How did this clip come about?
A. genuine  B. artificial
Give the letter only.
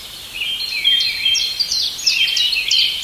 A